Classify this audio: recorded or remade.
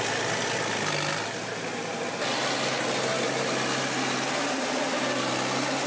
recorded